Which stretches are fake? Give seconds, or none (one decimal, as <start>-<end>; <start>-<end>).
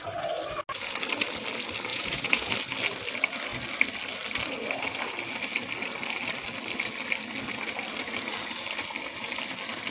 1.9-2.5